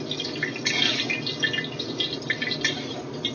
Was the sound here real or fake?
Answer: real